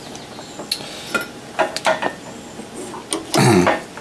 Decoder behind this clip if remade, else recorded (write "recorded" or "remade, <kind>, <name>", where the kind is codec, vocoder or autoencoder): recorded